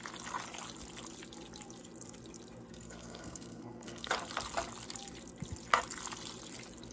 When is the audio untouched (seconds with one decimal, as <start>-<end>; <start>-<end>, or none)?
0.0-2.7; 4.1-6.9